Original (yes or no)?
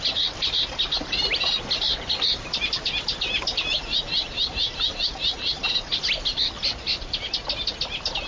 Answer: yes